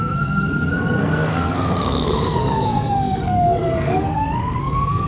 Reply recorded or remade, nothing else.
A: remade